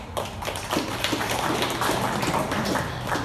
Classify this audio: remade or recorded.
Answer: recorded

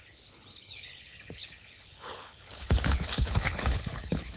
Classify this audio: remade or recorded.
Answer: remade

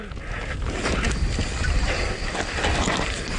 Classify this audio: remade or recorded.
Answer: recorded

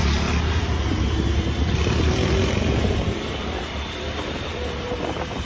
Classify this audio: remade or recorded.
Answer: remade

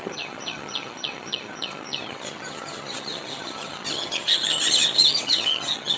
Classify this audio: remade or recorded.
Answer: remade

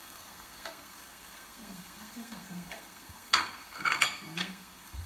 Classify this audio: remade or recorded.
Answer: remade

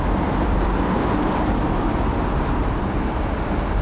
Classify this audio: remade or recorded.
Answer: remade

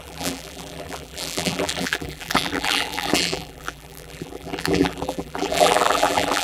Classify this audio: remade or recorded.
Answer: remade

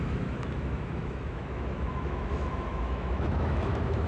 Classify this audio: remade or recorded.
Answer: remade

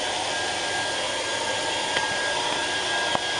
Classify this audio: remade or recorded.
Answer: recorded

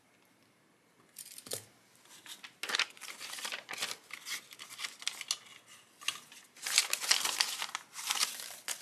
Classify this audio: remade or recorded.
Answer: recorded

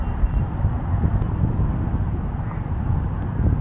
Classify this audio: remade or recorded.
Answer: recorded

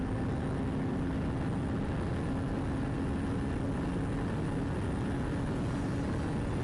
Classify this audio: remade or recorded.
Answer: recorded